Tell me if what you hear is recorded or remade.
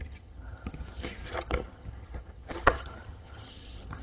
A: remade